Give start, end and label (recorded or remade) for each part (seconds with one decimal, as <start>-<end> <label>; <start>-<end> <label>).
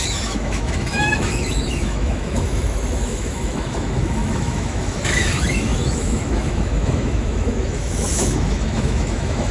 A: 0.0-9.5 remade